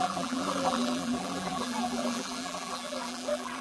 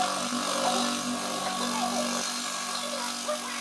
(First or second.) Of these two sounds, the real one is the second